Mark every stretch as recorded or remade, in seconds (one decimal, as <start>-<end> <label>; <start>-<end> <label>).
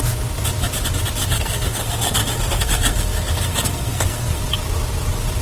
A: 0.0-1.2 recorded; 1.2-4.4 remade; 4.4-5.4 recorded